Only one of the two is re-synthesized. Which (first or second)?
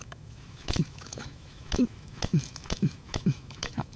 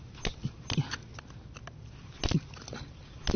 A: first